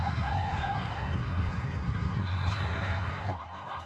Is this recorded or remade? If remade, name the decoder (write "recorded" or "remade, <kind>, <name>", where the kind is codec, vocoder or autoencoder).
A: remade, codec, SNAC